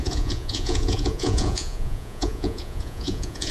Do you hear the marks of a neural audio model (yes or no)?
yes